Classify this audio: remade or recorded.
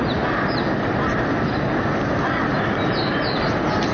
recorded